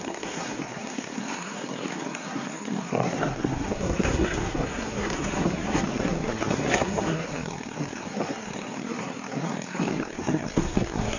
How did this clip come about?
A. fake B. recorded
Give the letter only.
A